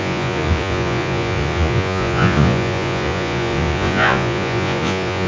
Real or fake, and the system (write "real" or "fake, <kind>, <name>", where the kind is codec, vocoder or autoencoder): fake, vocoder, Vocos